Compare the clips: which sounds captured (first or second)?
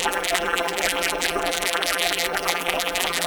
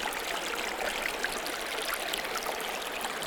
second